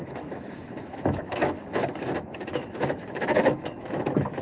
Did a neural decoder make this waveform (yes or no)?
yes